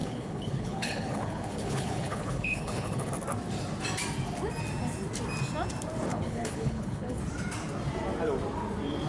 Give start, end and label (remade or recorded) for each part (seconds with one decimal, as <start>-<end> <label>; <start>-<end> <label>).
0.0-3.1 remade; 3.1-6.1 recorded; 6.1-7.2 remade; 7.2-9.1 recorded